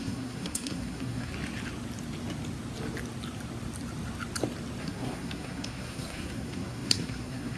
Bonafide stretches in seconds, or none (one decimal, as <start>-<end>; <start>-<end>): 1.3-4.8